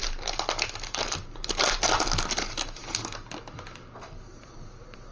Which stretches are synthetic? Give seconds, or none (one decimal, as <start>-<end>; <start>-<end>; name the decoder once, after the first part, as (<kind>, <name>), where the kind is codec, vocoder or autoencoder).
none